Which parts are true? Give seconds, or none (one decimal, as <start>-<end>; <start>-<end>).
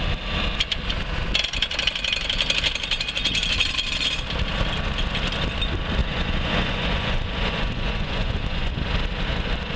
0.0-6.0; 8.7-9.8